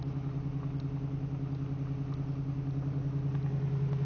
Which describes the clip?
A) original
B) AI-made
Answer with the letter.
A